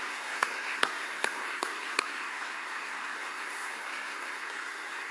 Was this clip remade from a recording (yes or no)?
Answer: yes